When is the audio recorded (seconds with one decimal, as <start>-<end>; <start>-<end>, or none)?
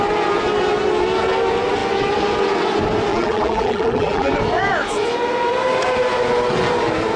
0.0-3.1; 4.3-7.2